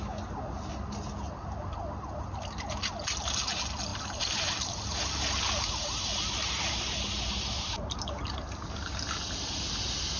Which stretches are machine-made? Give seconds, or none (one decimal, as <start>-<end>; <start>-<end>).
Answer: 3.9-5.0